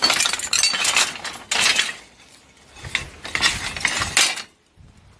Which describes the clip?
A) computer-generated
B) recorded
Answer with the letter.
B